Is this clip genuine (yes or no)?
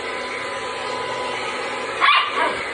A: yes